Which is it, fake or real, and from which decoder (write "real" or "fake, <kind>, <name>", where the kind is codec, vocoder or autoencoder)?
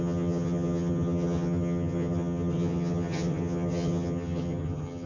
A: fake, vocoder, HiFi-GAN